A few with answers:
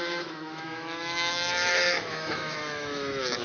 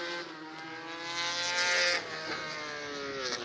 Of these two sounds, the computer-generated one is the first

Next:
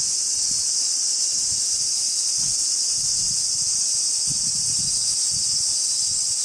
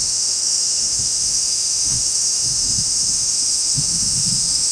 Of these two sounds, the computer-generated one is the second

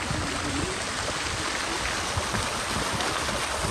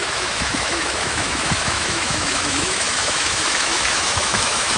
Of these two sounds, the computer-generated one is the second